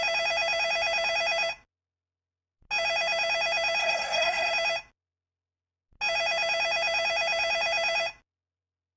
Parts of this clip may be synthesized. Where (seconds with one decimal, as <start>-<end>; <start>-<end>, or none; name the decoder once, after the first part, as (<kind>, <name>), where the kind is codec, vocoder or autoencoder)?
3.8-4.5 (codec, SNAC)